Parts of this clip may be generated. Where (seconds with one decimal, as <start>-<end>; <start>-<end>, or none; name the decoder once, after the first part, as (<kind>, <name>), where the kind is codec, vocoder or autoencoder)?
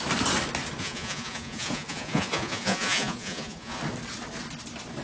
0.8-3.8 (vocoder, Vocos)